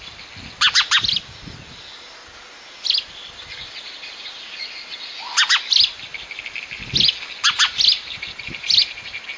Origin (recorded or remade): recorded